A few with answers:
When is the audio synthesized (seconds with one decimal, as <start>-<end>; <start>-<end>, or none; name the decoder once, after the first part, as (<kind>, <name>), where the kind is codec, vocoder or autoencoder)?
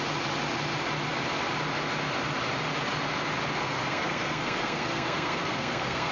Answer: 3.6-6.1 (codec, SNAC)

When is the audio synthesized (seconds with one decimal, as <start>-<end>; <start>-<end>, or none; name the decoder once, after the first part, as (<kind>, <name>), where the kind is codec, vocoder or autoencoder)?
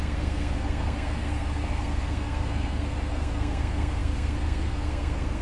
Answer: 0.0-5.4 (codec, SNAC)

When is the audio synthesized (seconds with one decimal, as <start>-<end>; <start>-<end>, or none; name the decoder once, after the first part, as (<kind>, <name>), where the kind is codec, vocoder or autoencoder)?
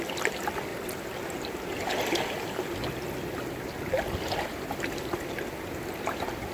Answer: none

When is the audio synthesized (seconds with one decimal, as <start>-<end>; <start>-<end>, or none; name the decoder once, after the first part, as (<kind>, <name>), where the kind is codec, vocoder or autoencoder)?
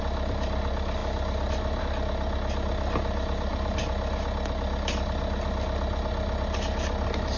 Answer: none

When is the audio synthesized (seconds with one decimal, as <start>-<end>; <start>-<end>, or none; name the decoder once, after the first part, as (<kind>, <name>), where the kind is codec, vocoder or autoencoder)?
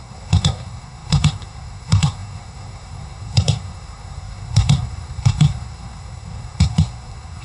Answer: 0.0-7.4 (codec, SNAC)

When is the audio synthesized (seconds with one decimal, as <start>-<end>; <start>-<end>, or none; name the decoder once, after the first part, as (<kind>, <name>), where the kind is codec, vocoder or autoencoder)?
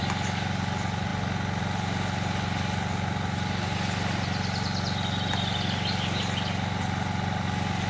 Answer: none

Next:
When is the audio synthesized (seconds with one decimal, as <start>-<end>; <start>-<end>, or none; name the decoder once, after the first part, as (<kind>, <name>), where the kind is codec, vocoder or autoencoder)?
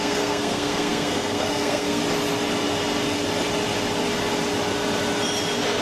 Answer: 0.0-2.0 (codec, SNAC)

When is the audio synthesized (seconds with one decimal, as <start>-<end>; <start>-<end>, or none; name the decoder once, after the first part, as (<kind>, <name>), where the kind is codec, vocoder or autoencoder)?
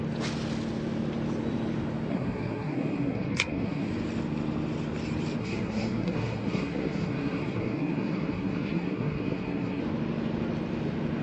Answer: 2.1-3.9 (codec, SNAC); 5.4-9.8